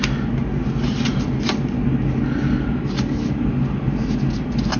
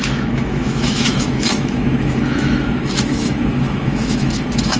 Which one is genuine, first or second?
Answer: first